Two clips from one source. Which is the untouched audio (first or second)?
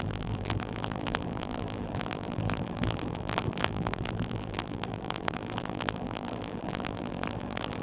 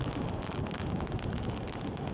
second